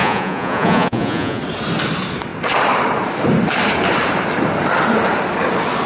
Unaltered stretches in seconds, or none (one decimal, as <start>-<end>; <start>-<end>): 1.4-5.9